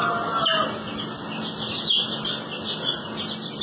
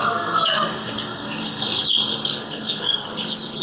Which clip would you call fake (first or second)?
second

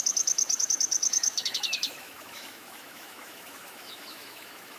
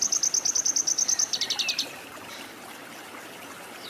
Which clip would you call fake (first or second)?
first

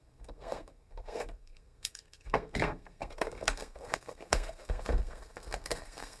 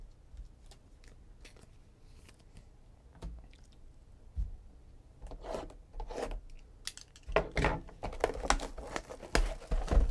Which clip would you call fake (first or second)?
first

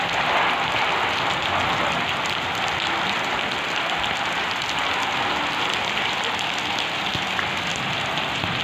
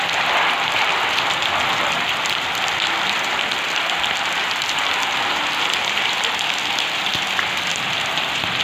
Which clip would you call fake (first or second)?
second